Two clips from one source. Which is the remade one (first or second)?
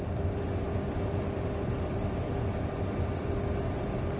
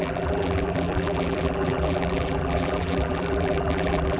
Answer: second